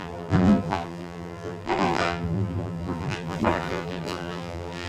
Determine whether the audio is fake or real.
fake